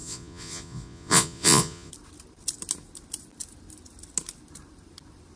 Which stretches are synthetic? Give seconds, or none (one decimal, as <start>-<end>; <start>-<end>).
0.0-1.9